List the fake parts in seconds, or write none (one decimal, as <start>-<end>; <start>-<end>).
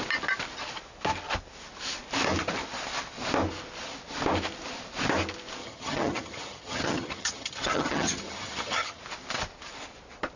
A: 5.6-9.0